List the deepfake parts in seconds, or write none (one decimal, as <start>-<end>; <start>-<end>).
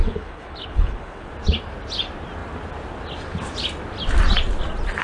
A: 0.0-1.3